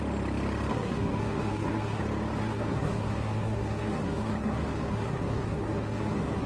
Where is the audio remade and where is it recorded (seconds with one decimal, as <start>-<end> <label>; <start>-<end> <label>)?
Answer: 0.0-0.7 recorded; 0.7-2.0 remade; 2.0-2.4 recorded; 2.4-6.5 remade